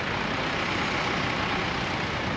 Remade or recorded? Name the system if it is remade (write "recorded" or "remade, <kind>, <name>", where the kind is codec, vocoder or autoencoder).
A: recorded